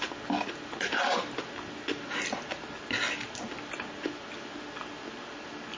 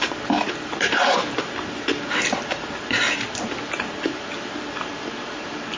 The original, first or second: first